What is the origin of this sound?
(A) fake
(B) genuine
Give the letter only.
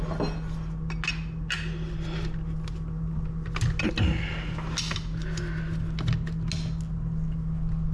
B